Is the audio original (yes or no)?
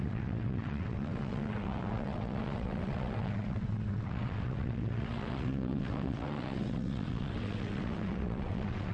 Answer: no